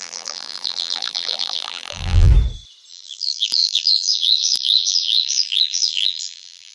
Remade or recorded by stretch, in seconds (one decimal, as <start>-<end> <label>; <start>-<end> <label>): 0.0-2.3 remade; 2.3-2.9 recorded; 2.9-6.7 remade